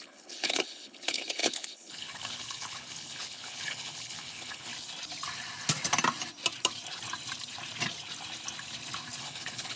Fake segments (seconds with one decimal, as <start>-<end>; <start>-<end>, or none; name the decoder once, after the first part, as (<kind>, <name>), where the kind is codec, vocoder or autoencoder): 0.0-4.7 (codec, HILCodec); 9.2-9.8